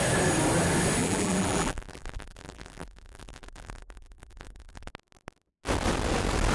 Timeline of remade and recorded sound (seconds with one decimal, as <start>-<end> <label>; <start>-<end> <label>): 0.0-1.0 recorded; 1.0-4.9 remade; 4.9-6.5 recorded